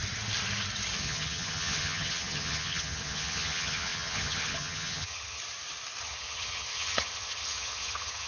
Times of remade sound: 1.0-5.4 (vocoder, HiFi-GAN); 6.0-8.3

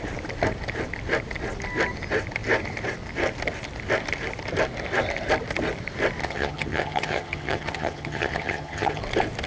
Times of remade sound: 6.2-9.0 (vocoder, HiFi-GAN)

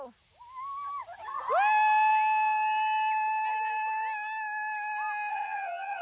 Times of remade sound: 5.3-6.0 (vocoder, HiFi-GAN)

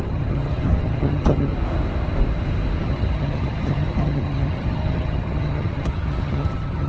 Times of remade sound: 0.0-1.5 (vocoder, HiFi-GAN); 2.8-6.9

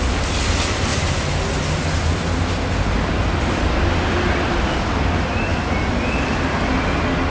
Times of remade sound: none

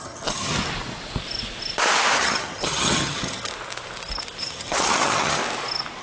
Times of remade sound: 0.0-0.5 (vocoder, HiFi-GAN); 2.2-3.5; 4.4-5.4

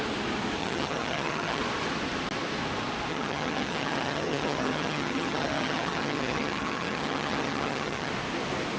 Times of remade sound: 0.6-1.6 (vocoder, HiFi-GAN); 3.1-8.1

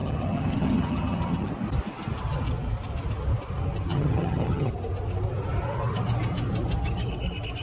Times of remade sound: 0.0-1.5 (vocoder, HiFi-GAN); 3.9-4.7